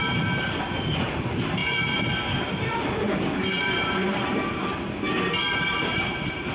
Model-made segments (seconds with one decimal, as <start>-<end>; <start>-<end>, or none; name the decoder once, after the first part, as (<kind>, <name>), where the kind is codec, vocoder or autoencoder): 0.0-6.5 (vocoder, BigVGAN v2)